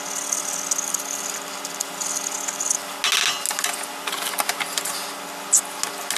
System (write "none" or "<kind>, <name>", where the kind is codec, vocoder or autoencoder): none